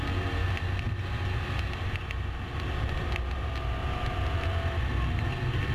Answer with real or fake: real